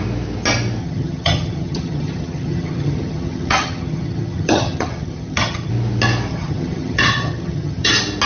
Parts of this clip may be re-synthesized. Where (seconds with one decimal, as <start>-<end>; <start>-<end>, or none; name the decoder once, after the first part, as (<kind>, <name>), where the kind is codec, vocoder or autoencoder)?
0.8-5.7 (vocoder, HiFi-GAN); 6.3-7.9